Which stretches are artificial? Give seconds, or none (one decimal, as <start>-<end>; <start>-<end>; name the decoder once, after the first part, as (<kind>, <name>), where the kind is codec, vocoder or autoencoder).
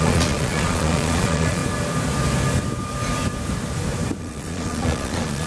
0.0-1.6 (vocoder, Vocos); 4.2-5.5